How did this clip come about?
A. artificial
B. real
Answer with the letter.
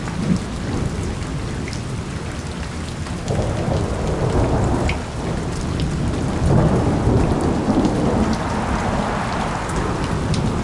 B